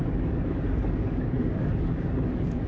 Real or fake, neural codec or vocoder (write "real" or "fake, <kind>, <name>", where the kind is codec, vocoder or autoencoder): fake, codec, DAC